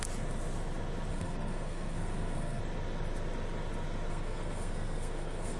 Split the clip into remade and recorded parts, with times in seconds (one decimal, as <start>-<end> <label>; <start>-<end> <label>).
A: 0.0-1.1 recorded; 1.1-2.6 remade; 2.6-4.1 recorded; 4.1-5.6 remade